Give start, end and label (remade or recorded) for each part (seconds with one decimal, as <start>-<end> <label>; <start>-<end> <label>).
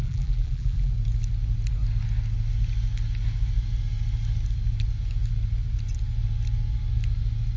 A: 0.0-0.9 remade; 0.9-7.6 recorded